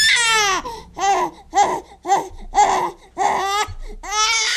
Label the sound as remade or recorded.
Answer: recorded